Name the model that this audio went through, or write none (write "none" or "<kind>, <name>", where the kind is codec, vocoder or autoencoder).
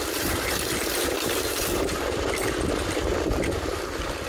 vocoder, BigVGAN v2